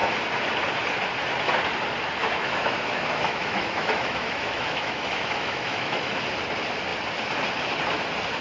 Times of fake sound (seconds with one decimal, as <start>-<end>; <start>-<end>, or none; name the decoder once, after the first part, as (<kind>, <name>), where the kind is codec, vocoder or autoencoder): 2.2-6.2 (autoencoder, DAC-VAE)